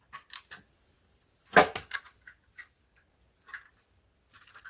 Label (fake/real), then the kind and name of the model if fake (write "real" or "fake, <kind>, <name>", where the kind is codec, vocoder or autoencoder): real